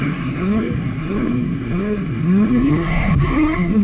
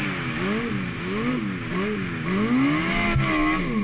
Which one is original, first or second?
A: second